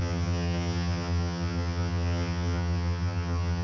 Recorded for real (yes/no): no